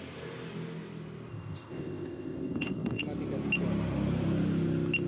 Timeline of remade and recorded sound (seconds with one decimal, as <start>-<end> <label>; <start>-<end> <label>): 0.0-1.3 recorded; 1.3-3.0 remade; 3.0-5.1 recorded